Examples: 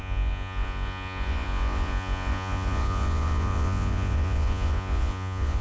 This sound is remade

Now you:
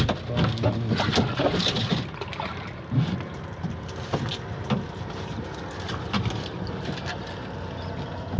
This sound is recorded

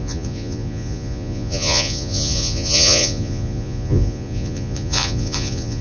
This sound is remade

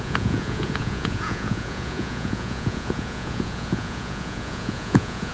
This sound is remade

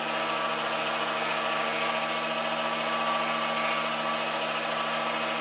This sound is recorded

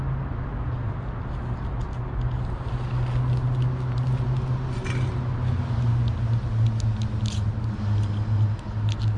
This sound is recorded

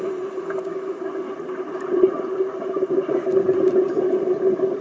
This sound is recorded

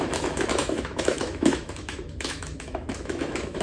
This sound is remade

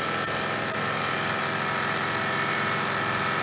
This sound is recorded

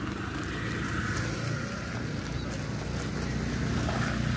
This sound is recorded